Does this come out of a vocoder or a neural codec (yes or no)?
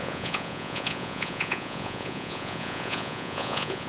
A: yes